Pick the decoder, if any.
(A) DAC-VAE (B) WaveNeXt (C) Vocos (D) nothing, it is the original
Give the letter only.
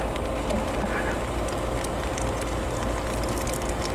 D